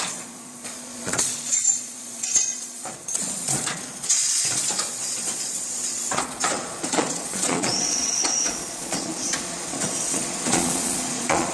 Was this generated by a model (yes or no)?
yes